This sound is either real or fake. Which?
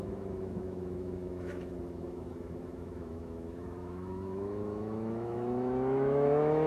fake